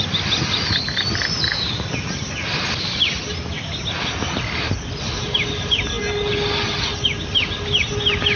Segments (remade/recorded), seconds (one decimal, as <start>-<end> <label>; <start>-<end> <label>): 0.0-8.4 recorded